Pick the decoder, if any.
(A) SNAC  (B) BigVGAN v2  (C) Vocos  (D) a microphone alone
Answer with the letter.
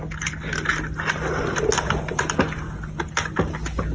D